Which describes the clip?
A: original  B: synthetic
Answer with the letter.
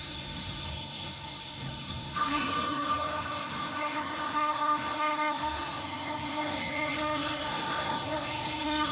B